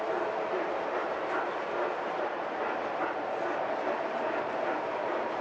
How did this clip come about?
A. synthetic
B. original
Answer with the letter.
A